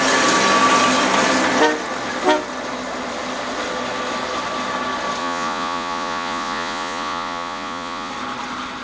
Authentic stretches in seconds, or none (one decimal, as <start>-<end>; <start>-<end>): 0.0-5.2; 8.1-8.8